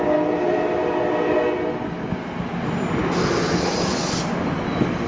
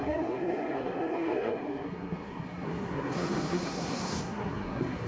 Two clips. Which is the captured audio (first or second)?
first